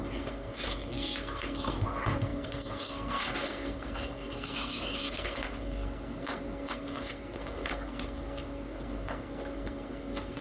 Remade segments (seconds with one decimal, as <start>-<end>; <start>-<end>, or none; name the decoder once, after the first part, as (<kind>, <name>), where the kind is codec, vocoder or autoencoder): 0.0-10.4 (codec, SNAC)